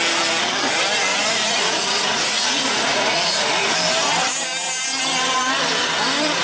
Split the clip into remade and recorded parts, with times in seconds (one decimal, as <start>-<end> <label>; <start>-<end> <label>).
0.0-1.1 recorded; 1.1-3.7 remade; 3.7-6.4 recorded